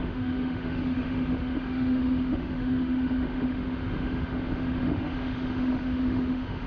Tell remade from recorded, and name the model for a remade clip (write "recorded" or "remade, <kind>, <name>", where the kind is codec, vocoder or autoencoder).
remade, autoencoder, DAC-VAE